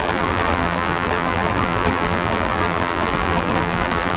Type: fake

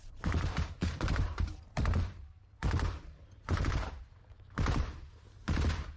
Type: fake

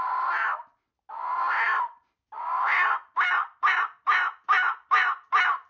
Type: real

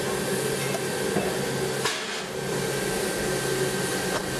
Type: real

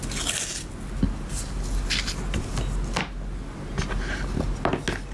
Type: real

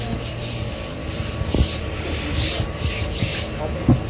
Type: real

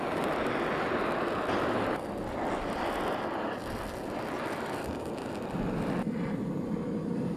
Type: real